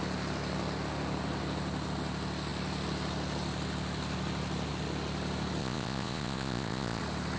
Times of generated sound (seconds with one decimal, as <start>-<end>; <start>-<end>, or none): 5.6-7.0